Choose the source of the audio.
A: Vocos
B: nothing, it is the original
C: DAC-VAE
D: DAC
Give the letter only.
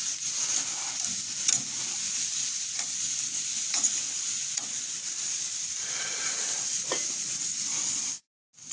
B